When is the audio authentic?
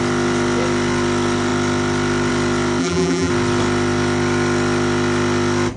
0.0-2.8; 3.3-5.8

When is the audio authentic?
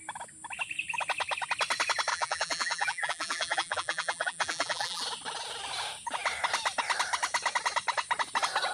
0.0-2.1; 5.0-8.7